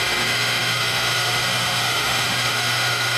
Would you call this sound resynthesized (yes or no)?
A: yes